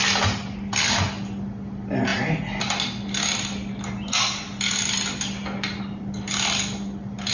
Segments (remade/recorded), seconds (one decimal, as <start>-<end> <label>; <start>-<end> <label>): 0.0-7.3 recorded